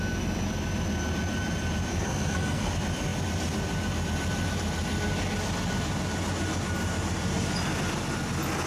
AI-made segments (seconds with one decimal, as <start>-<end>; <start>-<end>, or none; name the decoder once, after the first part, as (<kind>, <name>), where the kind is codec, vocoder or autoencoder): 1.9-2.7 (codec, SNAC)